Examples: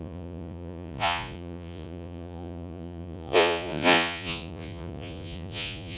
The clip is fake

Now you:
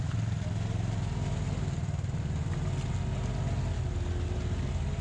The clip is real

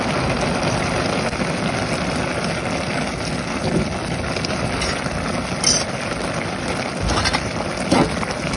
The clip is real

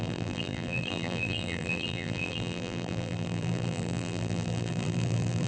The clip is fake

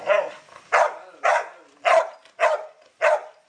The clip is real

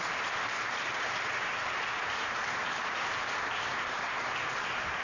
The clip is fake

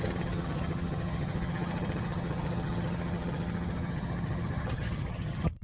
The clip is fake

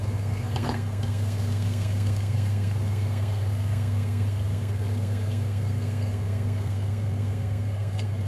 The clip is fake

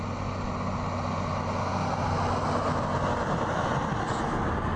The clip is real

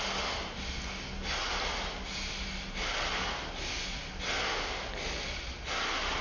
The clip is real